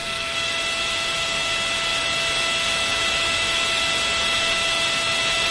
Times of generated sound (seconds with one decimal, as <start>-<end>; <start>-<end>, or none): 0.0-0.5